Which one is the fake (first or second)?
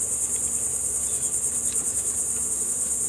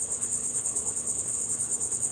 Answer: second